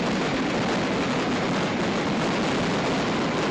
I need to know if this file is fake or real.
real